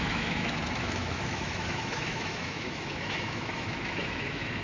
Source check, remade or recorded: remade